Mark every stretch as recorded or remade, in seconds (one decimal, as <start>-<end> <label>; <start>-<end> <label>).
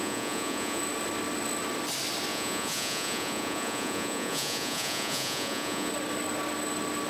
0.0-0.8 remade; 0.8-2.3 recorded; 2.3-5.9 remade; 5.9-7.1 recorded